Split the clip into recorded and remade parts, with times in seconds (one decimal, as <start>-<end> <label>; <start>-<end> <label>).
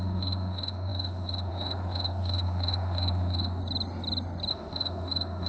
0.0-3.6 remade; 3.6-4.5 recorded; 4.5-5.5 remade